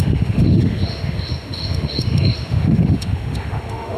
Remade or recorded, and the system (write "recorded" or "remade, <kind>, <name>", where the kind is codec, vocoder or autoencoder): remade, autoencoder, DAC-VAE